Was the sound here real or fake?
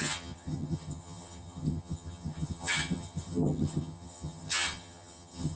fake